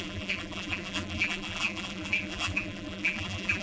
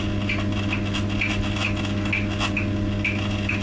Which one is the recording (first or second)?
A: second